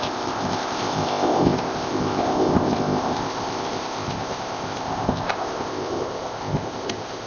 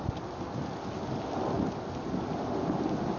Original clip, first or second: second